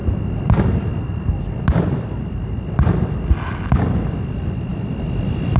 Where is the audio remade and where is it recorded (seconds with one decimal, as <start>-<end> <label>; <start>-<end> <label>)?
0.0-5.6 recorded